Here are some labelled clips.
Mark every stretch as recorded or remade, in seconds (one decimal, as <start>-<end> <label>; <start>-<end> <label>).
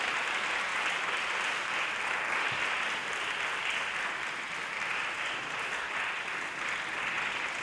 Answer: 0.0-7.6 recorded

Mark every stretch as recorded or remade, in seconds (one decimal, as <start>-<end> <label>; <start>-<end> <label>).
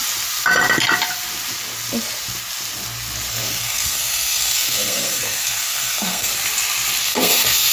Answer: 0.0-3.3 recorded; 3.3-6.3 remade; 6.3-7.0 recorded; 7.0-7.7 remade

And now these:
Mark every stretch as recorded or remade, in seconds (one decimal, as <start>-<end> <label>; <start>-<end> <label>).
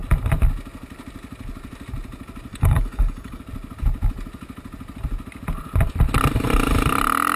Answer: 0.0-2.5 recorded; 2.5-3.4 remade; 3.4-7.4 recorded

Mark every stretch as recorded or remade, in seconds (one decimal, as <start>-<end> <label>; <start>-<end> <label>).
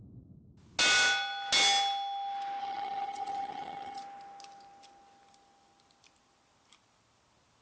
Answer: 0.0-2.6 recorded; 2.6-4.0 remade; 4.0-7.6 recorded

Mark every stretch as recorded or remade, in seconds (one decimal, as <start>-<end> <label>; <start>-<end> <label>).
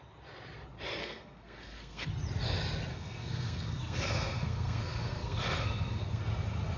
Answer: 0.0-1.0 recorded; 1.0-2.1 remade; 2.1-2.9 recorded; 2.9-6.2 remade; 6.2-6.8 recorded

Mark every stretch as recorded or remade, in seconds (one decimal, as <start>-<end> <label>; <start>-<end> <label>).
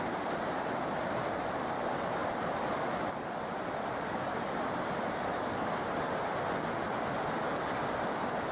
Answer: 0.0-8.5 recorded